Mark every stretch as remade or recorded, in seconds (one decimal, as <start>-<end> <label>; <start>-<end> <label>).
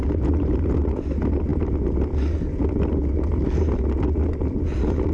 0.0-5.1 recorded